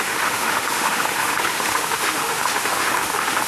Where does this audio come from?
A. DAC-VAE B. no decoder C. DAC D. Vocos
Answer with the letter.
A